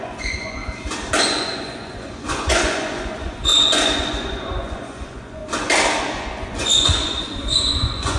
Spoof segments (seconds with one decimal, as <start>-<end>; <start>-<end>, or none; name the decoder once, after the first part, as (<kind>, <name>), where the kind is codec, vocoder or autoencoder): 0.0-0.6 (vocoder, Vocos); 1.2-5.4; 6.0-8.2